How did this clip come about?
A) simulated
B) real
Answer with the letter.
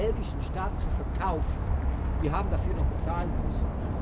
B